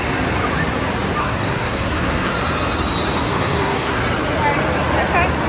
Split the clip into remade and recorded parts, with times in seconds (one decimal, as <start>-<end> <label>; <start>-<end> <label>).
0.0-1.2 recorded; 1.2-2.3 remade; 2.3-3.3 recorded; 3.3-4.0 remade; 4.0-5.5 recorded